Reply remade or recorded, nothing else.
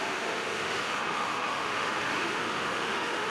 remade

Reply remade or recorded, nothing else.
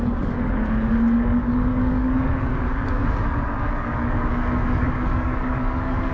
remade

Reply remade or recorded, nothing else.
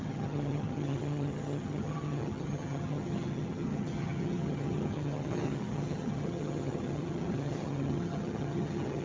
remade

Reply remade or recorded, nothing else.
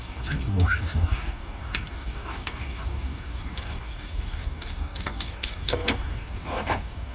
remade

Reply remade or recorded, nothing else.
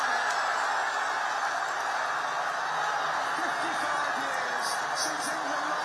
recorded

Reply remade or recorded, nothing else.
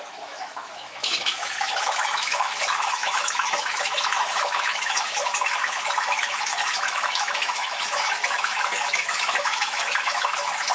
remade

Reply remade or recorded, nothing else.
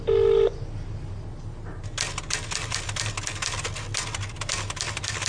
recorded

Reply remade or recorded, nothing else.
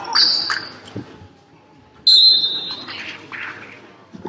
recorded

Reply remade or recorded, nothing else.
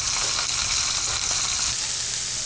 recorded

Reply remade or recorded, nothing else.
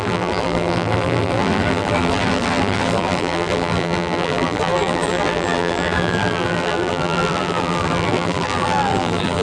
remade